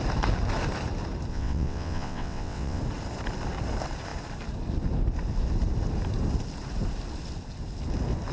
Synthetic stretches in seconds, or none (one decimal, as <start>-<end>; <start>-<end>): 1.3-2.8